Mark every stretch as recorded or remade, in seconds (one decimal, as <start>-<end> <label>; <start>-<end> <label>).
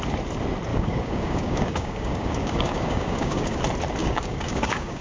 0.0-0.7 recorded; 0.7-3.6 remade; 3.6-4.0 recorded; 4.0-5.0 remade